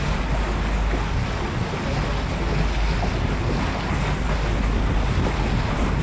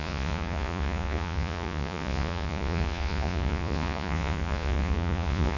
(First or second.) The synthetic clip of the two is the second